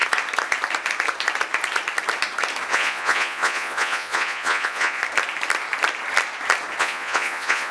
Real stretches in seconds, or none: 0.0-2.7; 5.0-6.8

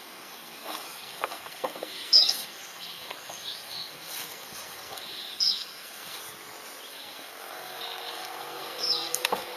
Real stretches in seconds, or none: 6.2-6.9